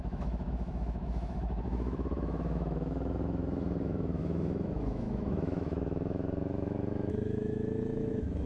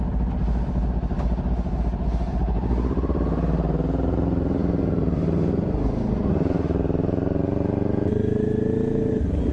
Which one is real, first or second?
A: second